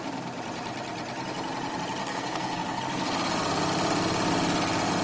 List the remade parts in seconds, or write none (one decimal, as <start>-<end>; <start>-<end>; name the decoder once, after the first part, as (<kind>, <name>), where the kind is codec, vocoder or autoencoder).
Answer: 2.0-2.8 (codec, SNAC)